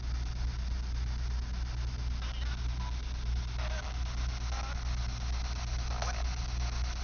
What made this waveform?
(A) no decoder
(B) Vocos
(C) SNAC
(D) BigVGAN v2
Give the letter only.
A